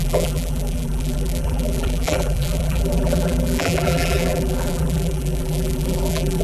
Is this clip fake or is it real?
fake